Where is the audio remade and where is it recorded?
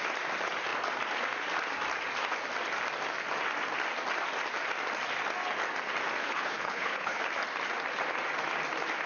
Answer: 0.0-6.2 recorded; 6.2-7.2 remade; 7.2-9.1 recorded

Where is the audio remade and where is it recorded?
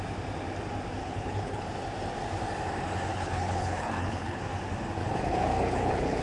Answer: 0.0-1.0 recorded; 1.0-1.6 remade; 1.6-3.1 recorded; 3.1-4.4 remade; 4.4-5.0 recorded; 5.0-6.2 remade